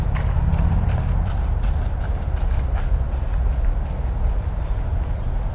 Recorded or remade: recorded